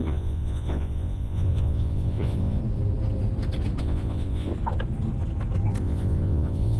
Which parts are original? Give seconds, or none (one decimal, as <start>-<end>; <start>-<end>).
2.6-3.8; 4.5-5.8